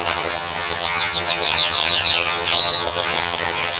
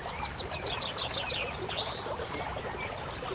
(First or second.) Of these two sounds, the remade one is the first